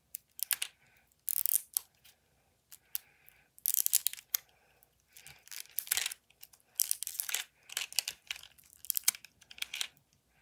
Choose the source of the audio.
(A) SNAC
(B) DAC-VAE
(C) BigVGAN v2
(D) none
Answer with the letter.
D